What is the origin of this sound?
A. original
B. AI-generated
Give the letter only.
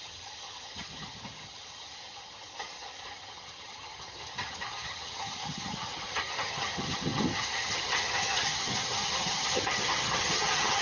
B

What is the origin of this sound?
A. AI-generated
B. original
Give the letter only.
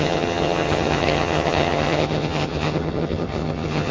A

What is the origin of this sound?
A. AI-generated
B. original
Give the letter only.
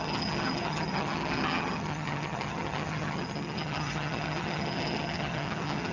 A